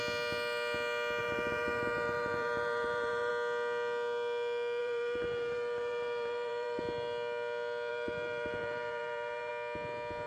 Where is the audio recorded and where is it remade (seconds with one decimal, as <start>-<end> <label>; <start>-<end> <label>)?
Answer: 0.0-1.2 recorded; 1.2-3.3 remade; 3.3-4.8 recorded; 4.8-6.8 remade; 6.8-7.9 recorded; 7.9-9.5 remade; 9.5-10.3 recorded